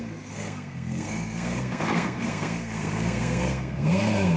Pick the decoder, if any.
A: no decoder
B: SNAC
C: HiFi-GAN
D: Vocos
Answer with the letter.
B